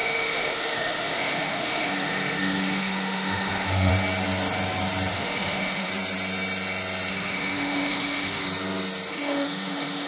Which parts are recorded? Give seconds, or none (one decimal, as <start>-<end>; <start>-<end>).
3.9-5.1; 5.9-7.1; 8.5-9.1